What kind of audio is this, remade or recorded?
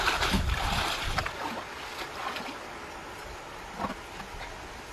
recorded